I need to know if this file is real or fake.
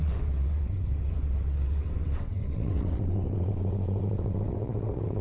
fake